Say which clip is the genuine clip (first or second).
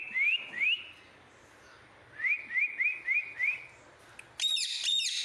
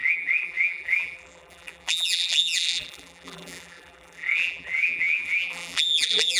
first